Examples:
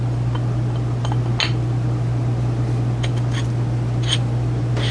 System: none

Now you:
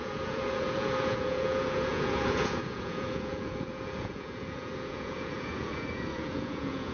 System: vocoder, Vocos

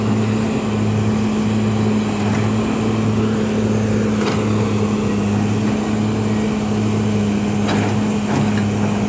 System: none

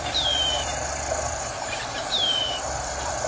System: vocoder, BigVGAN v2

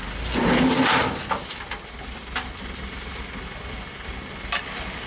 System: none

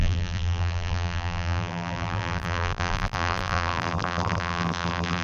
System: vocoder, BigVGAN v2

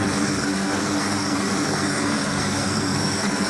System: codec, SNAC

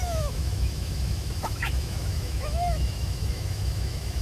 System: autoencoder, DAC-VAE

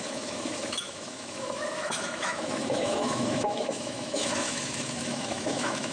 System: autoencoder, DAC-VAE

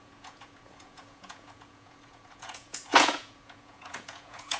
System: vocoder, Vocos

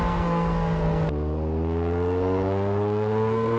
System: codec, SNAC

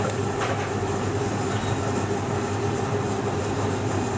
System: none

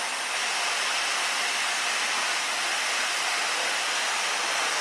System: none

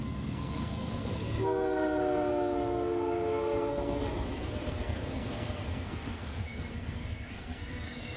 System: codec, SNAC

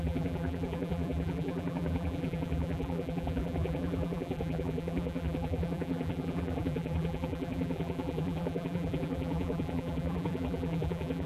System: vocoder, BigVGAN v2